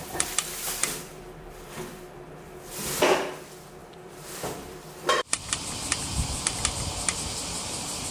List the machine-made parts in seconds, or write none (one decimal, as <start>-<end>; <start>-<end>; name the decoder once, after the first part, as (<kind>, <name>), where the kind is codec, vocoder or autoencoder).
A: 0.8-2.7 (vocoder, BigVGAN v2); 3.8-8.1